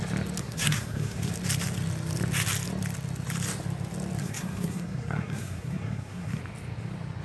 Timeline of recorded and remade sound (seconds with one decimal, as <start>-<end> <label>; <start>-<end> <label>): 0.0-0.4 recorded; 0.4-1.3 remade; 1.3-4.2 recorded; 4.2-6.4 remade; 6.4-7.2 recorded